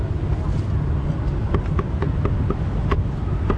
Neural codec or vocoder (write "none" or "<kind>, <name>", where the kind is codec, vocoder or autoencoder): none